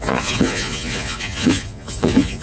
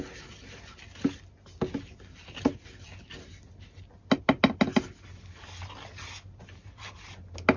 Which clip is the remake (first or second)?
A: first